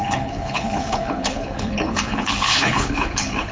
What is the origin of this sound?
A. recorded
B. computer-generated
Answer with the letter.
B